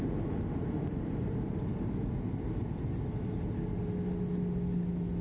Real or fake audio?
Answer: real